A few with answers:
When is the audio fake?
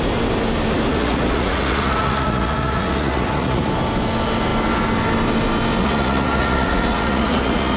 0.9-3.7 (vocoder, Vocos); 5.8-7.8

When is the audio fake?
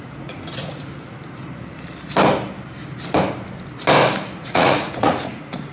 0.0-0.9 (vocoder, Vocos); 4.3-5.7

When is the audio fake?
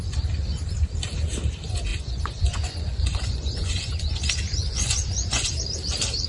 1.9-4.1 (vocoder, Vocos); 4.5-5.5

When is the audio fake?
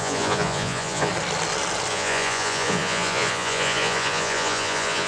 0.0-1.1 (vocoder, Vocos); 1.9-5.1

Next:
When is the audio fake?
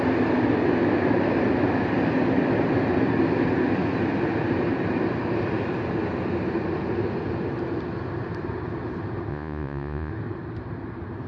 9.3-10.1 (vocoder, Vocos)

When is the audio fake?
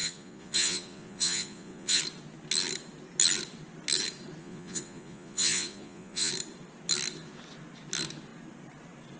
0.0-2.0 (vocoder, Vocos); 4.4-6.3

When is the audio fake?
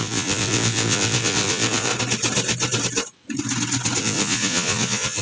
0.0-1.9 (vocoder, Vocos); 4.0-5.2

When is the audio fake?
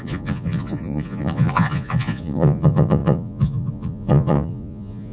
0.0-5.1 (vocoder, Vocos)